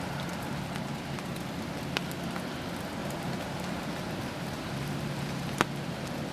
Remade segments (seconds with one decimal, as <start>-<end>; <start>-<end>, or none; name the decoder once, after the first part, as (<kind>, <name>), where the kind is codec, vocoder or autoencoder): 3.0-5.6 (vocoder, BigVGAN v2)